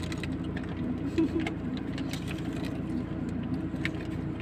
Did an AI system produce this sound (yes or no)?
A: no